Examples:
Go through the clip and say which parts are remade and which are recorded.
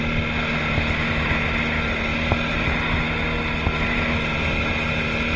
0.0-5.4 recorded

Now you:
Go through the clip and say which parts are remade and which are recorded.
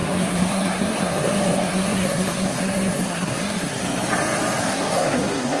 0.0-3.8 remade; 3.8-4.6 recorded; 4.6-5.6 remade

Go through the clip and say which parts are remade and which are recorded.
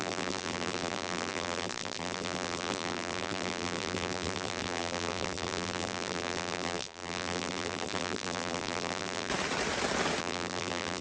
0.0-9.3 remade; 9.3-10.2 recorded; 10.2-11.0 remade